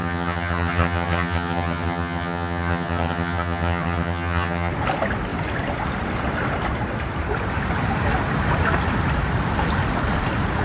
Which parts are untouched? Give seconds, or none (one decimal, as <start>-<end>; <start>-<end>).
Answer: 4.7-10.6